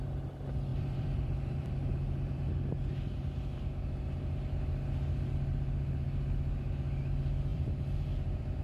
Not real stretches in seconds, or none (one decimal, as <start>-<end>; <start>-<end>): 0.7-2.5; 7.5-8.6

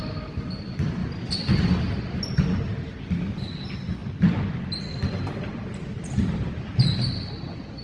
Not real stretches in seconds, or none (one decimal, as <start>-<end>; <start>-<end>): none